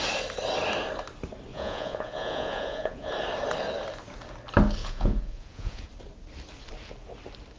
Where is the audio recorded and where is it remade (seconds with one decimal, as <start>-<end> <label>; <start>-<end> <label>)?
0.0-1.5 recorded; 1.5-3.1 remade; 3.1-4.8 recorded; 4.8-5.9 remade; 5.9-7.6 recorded